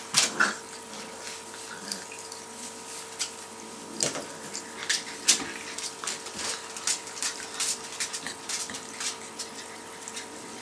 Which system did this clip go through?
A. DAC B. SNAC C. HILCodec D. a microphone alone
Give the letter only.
D